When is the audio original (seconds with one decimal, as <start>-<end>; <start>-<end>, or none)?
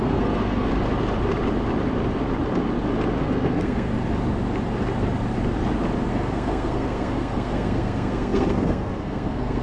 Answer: 0.7-3.2; 3.9-6.1